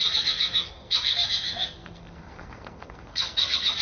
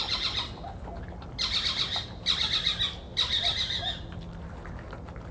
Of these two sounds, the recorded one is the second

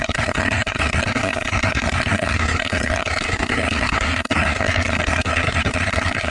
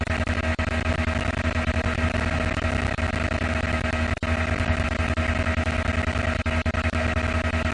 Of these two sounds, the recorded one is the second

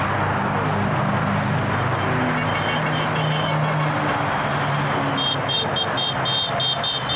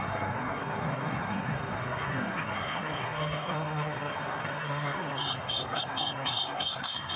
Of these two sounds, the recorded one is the first